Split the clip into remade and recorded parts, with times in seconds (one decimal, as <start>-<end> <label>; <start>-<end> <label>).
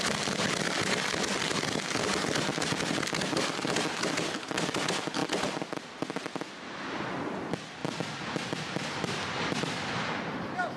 0.0-10.8 recorded